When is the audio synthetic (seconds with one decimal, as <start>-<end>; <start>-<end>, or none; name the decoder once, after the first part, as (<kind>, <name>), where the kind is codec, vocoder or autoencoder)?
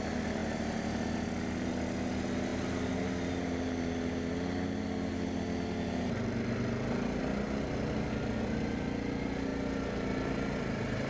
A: none